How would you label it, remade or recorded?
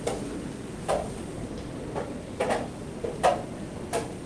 recorded